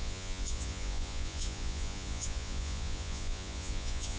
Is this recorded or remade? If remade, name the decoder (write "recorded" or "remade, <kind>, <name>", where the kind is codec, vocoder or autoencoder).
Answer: remade, vocoder, Vocos